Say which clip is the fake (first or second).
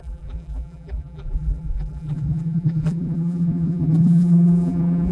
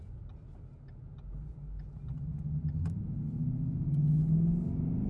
first